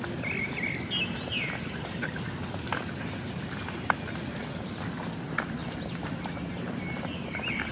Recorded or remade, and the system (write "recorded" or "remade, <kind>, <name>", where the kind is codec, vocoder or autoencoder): recorded